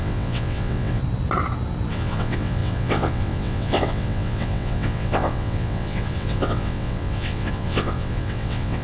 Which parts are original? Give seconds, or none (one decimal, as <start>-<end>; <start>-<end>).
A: 1.0-1.9